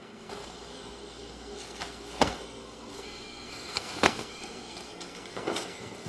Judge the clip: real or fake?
fake